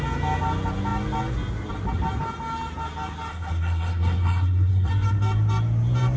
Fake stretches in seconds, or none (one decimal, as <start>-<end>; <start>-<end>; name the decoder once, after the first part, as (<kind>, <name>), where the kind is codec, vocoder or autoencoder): 3.3-4.9 (codec, SNAC)